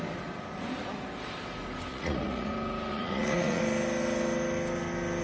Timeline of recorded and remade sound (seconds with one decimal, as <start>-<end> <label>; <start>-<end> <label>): 0.0-1.9 recorded; 1.9-2.5 remade; 2.5-2.9 recorded; 2.9-3.6 remade; 3.6-5.2 recorded